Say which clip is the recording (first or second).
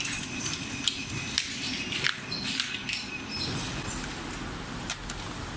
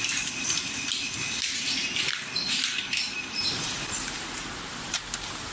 first